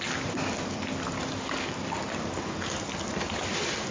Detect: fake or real real